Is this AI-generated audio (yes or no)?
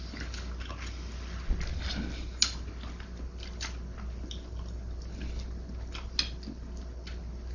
no